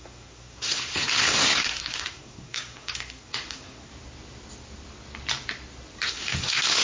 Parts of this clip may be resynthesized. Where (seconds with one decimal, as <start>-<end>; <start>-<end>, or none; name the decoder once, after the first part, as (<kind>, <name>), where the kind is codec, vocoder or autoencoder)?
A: 0.0-3.9 (codec, SNAC); 6.1-6.8